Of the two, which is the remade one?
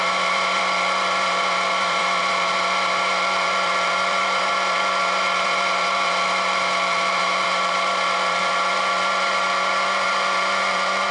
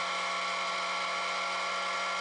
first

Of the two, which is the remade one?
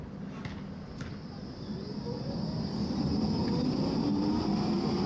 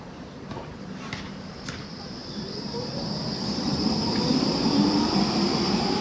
second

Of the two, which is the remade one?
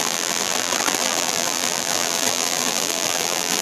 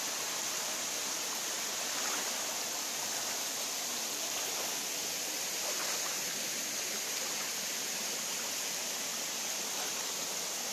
first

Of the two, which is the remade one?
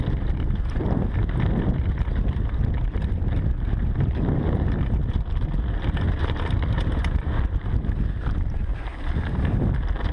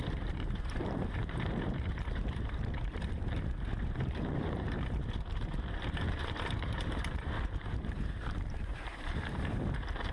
second